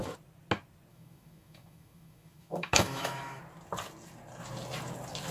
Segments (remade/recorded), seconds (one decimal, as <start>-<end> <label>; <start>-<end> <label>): 0.0-0.9 recorded; 0.9-3.4 remade; 3.4-5.3 recorded